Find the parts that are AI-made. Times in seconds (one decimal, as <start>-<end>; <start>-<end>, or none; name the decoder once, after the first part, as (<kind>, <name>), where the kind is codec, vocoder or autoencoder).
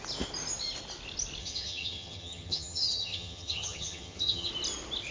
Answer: 1.4-4.5 (vocoder, HiFi-GAN)